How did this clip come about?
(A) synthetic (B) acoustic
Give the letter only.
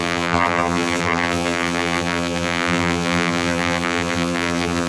A